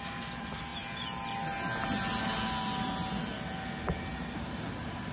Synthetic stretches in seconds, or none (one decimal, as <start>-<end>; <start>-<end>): none